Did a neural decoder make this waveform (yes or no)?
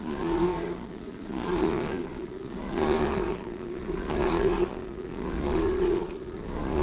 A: yes